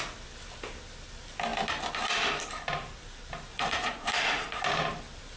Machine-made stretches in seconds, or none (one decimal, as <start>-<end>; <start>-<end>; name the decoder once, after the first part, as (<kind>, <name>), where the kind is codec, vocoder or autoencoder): 3.5-4.6 (vocoder, Vocos)